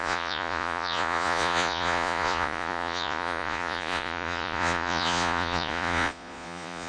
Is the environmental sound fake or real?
fake